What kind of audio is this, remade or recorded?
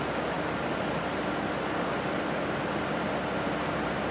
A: remade